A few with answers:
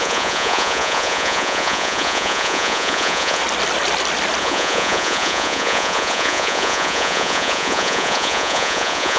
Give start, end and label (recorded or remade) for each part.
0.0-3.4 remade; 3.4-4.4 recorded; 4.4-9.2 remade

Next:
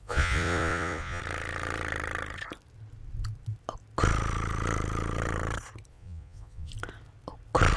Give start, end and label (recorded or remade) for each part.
0.0-1.2 remade; 1.2-5.9 recorded; 5.9-6.7 remade; 6.7-7.8 recorded